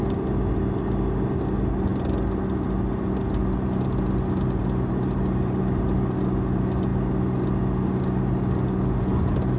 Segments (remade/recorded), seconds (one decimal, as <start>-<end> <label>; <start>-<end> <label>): 0.0-9.6 recorded